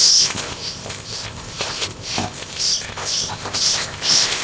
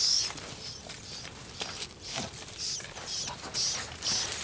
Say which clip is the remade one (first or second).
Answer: first